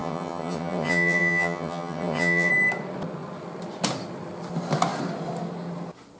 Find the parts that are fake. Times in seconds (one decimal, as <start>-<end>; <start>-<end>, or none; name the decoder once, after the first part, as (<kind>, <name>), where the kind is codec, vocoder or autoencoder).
0.0-2.5 (vocoder, HiFi-GAN)